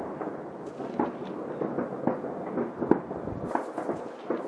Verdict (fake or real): real